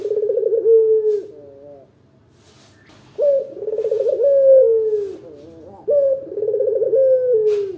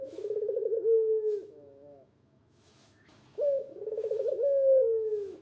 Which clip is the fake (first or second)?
second